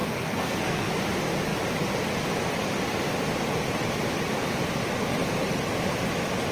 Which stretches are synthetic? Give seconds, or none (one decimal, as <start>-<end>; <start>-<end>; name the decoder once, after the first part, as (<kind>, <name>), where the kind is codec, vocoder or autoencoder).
0.0-0.9 (codec, SNAC)